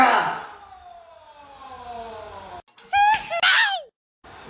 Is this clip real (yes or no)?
yes